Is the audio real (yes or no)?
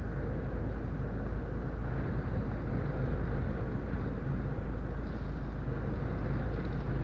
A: yes